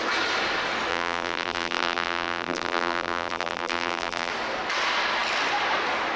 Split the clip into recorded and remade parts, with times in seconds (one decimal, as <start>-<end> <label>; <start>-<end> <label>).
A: 0.0-0.9 recorded; 0.9-4.3 remade; 4.3-6.2 recorded